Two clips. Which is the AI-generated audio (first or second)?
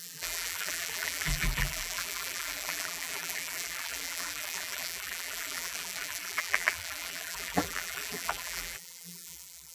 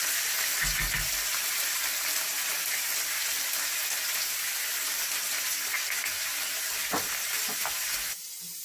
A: first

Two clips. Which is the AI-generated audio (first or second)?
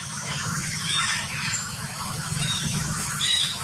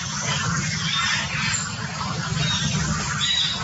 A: first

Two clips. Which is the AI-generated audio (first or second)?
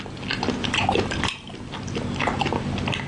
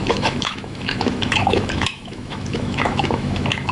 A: second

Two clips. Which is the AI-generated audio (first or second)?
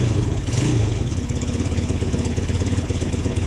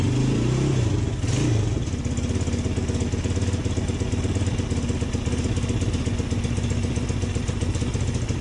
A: first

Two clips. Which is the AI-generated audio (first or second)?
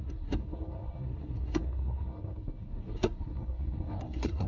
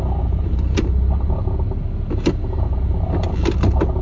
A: first